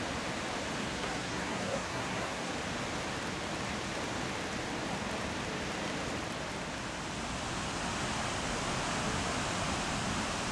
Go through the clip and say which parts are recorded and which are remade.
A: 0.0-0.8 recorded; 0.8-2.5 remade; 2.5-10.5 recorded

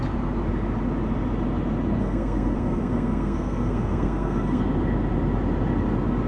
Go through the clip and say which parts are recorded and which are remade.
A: 0.0-2.0 recorded; 2.0-4.6 remade; 4.6-6.3 recorded

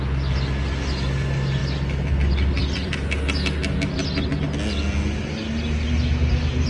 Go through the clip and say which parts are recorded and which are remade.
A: 0.0-6.7 recorded